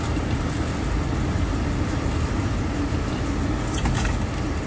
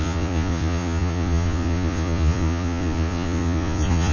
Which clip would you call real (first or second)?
first